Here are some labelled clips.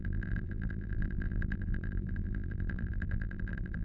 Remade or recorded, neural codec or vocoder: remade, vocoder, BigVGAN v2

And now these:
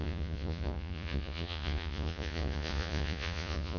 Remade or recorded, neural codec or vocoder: remade, vocoder, Vocos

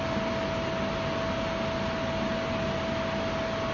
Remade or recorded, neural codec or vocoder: recorded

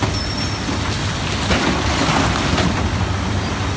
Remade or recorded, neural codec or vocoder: recorded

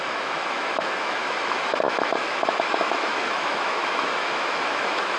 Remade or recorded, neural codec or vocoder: remade, autoencoder, DAC-VAE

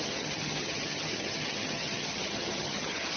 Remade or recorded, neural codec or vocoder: remade, vocoder, HiFi-GAN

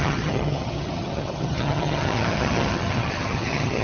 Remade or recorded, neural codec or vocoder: remade, vocoder, HiFi-GAN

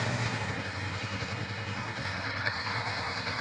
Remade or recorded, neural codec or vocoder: remade, codec, SNAC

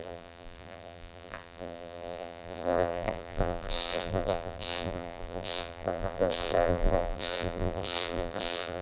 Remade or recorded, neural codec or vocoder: remade, vocoder, BigVGAN v2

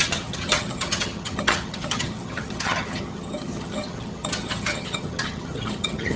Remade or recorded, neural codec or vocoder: remade, vocoder, HiFi-GAN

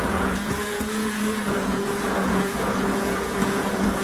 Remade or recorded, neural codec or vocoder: remade, vocoder, Vocos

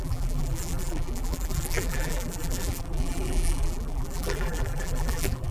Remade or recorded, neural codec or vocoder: remade, vocoder, BigVGAN v2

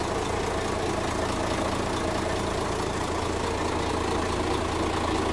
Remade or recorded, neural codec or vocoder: recorded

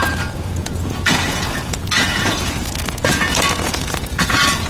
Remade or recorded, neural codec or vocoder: remade, vocoder, Vocos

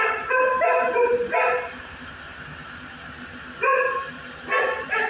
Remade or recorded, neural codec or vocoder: remade, vocoder, BigVGAN v2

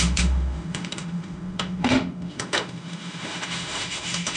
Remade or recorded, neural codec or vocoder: remade, autoencoder, DAC-VAE